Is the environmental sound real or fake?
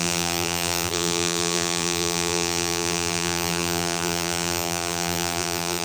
fake